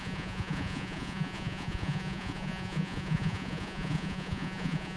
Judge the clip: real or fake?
fake